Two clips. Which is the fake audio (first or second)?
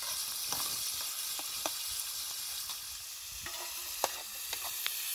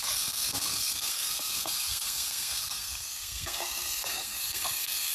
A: second